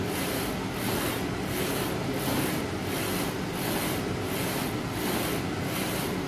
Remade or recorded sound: recorded